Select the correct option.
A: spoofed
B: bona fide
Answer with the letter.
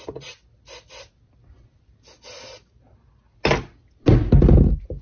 B